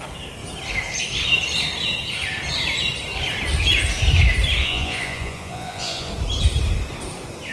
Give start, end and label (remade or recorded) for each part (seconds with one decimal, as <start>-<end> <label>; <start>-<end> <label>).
0.0-4.6 recorded; 4.6-6.1 remade; 6.1-7.5 recorded